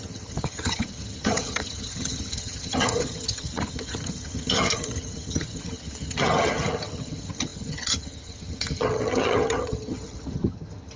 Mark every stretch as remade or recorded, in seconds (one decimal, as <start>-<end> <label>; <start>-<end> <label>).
0.0-11.0 remade